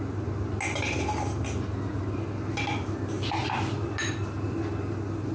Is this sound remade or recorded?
recorded